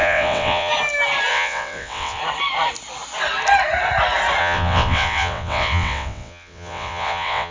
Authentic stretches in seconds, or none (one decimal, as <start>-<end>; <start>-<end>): 0.7-1.3; 2.2-4.4